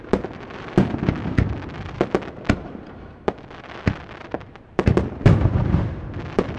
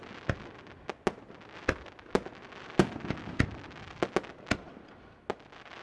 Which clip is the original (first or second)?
second